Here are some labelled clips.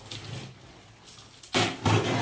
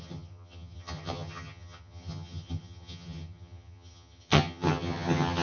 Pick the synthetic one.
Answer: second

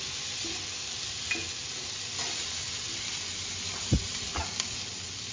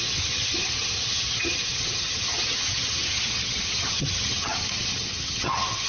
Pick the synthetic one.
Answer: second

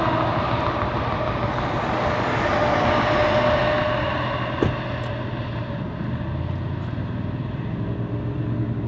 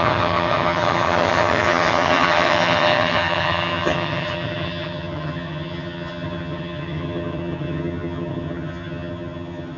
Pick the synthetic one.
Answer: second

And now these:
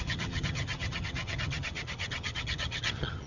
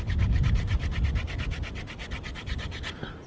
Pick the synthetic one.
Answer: first